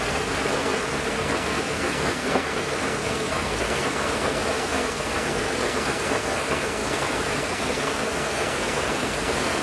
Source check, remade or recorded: remade